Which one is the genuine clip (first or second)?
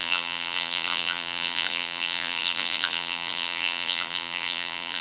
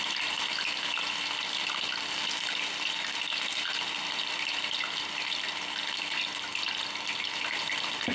second